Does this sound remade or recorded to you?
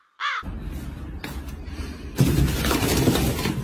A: recorded